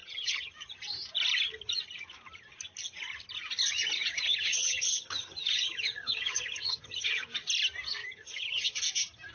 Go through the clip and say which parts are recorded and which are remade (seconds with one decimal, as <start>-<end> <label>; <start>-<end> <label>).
0.0-0.5 remade; 0.5-4.3 recorded; 4.3-7.3 remade; 7.3-8.0 recorded; 8.0-8.8 remade; 8.8-9.3 recorded